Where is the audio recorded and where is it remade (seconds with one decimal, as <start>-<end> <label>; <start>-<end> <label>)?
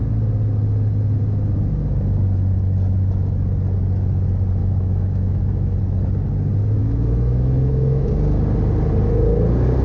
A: 0.0-4.6 recorded; 4.6-5.8 remade; 5.8-6.8 recorded; 6.8-8.1 remade; 8.1-9.8 recorded